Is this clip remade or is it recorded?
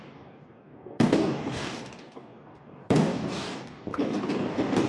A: remade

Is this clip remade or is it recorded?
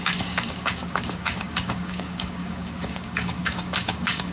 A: remade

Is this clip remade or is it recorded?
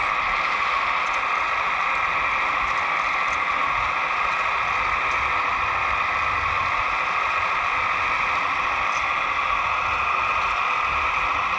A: recorded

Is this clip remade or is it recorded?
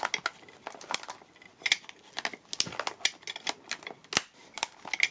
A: recorded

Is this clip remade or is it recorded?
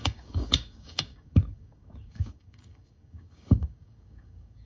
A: remade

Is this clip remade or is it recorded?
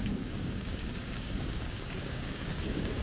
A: remade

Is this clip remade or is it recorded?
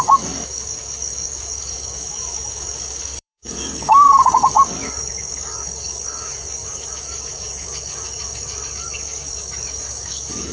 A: remade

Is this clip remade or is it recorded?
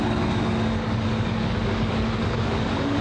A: remade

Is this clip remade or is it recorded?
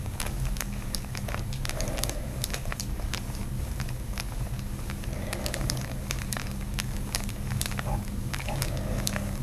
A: remade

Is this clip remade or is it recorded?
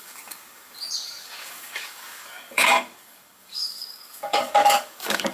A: remade